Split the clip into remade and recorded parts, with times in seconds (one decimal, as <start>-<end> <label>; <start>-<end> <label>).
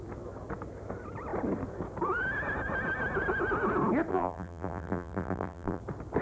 0.0-4.1 recorded; 4.1-5.8 remade; 5.8-6.2 recorded